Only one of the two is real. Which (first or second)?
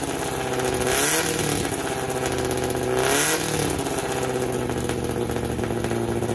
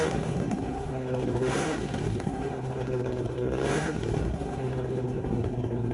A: first